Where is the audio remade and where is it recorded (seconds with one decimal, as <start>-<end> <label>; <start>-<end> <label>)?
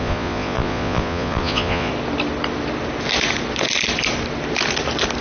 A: 0.0-1.9 remade; 1.9-5.2 recorded